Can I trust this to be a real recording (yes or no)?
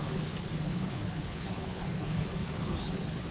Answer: no